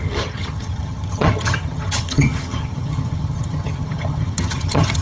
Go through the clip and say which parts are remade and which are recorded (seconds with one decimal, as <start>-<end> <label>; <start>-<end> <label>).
0.0-5.0 remade